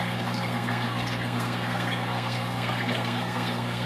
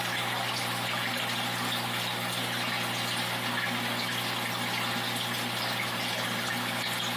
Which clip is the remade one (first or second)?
first